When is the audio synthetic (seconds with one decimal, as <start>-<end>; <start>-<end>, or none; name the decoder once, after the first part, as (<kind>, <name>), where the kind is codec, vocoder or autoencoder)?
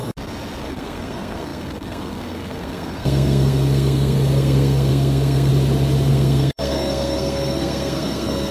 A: 0.6-5.5 (codec, SNAC); 6.1-8.5